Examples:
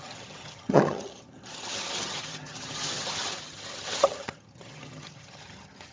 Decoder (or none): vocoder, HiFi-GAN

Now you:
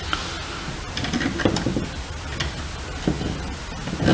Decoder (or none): none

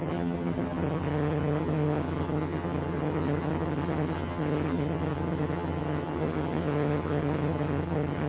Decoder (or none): vocoder, HiFi-GAN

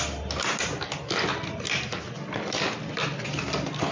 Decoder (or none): none